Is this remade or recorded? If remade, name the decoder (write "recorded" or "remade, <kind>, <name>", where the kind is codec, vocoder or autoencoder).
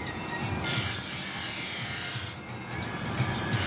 recorded